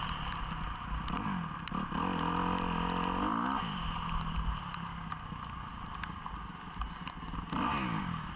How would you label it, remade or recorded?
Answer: recorded